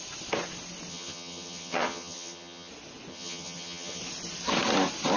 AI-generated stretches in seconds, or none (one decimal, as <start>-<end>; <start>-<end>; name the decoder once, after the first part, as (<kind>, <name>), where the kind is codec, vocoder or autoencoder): 0.9-2.7 (vocoder, HiFi-GAN); 3.1-4.0